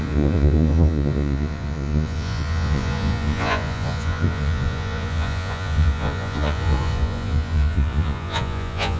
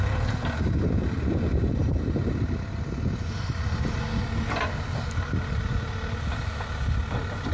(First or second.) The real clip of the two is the second